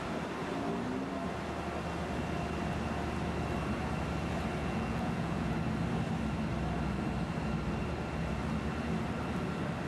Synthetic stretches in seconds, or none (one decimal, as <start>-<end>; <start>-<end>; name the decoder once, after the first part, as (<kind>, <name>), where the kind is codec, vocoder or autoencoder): 4.6-5.5 (vocoder, Vocos)